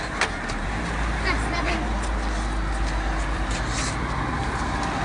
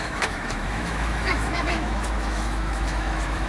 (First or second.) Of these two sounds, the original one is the first